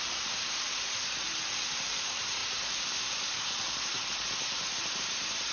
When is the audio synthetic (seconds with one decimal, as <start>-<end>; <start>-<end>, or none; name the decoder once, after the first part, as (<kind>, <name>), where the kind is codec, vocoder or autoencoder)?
0.0-1.0 (vocoder, BigVGAN v2); 1.9-2.4; 3.3-5.5